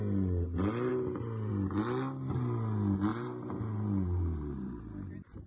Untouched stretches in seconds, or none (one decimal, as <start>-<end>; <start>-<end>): 0.0-3.1